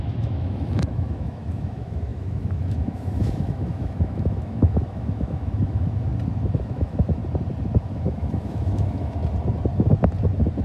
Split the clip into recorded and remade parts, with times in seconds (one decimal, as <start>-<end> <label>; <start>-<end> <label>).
0.0-6.1 remade; 6.1-6.6 recorded; 6.6-7.2 remade; 7.2-7.8 recorded; 7.8-9.2 remade; 9.2-10.6 recorded